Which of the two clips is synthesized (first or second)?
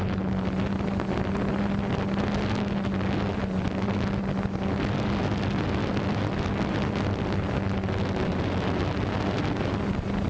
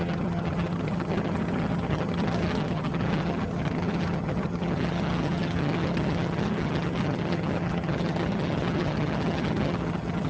second